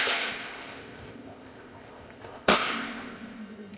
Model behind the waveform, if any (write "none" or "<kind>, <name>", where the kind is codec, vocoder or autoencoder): codec, ZipCodec